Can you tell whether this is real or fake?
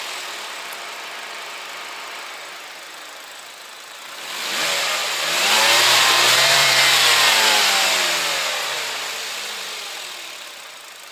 fake